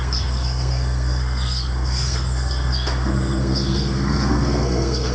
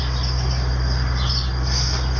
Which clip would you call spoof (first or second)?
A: first